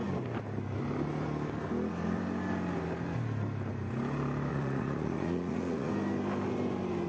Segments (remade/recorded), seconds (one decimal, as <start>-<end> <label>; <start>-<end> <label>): 0.0-4.5 recorded; 4.5-5.9 remade; 5.9-7.1 recorded